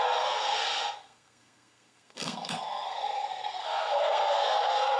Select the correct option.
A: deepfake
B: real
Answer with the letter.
A